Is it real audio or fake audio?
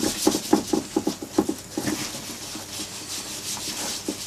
real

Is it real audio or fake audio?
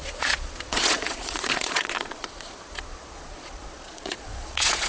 fake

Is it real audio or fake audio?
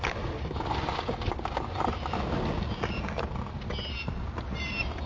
real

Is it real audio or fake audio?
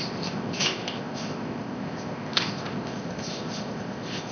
fake